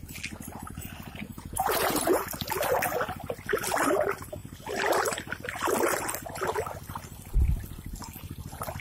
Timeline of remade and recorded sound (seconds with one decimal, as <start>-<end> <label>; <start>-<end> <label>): 0.0-1.3 recorded; 1.3-2.2 remade; 2.2-8.8 recorded